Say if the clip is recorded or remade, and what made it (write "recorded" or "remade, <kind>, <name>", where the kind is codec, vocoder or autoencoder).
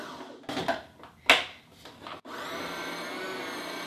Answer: recorded